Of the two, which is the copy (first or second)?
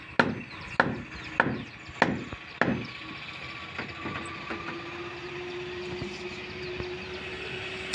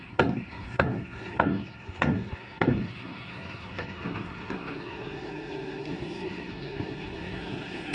second